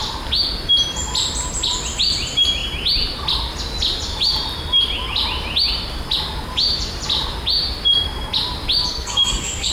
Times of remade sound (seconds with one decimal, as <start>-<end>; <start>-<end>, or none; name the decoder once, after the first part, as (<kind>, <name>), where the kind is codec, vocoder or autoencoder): 8.8-9.7 (codec, SNAC)